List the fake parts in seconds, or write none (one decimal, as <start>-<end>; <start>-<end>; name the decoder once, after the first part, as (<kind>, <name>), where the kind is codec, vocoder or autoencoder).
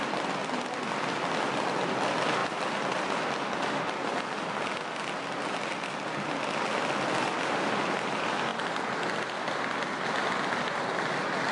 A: none